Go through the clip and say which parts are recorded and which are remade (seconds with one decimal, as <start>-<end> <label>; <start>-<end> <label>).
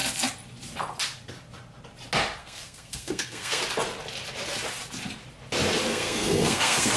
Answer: 0.0-2.4 recorded; 2.4-3.6 remade; 3.6-5.9 recorded; 5.9-7.0 remade